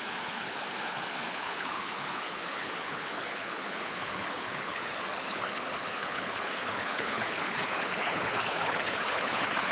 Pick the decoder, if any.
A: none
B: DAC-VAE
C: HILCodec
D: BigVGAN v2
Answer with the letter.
C